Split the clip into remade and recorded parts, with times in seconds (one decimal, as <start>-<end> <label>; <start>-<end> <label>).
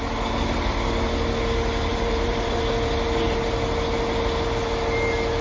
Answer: 0.0-1.9 recorded; 1.9-2.7 remade; 2.7-5.4 recorded